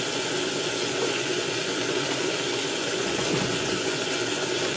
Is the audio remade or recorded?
remade